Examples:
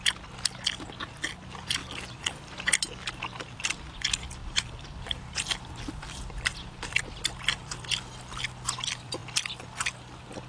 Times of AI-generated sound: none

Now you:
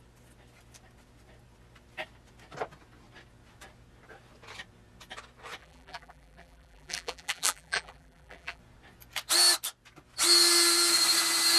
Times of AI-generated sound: 5.6-8.6 (vocoder, BigVGAN v2)